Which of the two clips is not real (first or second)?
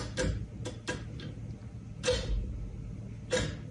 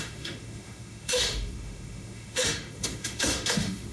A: second